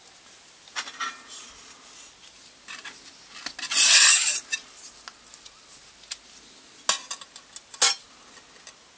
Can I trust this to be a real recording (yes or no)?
yes